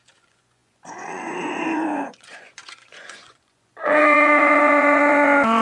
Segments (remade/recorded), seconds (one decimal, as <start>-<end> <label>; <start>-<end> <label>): 0.0-5.6 remade